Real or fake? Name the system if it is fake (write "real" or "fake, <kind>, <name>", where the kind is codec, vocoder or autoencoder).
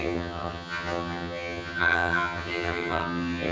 fake, vocoder, HiFi-GAN